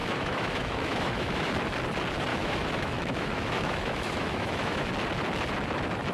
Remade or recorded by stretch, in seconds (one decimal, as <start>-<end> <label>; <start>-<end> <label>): 0.0-1.5 remade; 1.5-2.3 recorded; 2.3-4.9 remade; 4.9-6.1 recorded